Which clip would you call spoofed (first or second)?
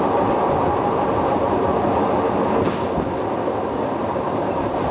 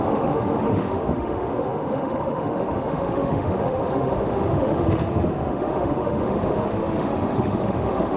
second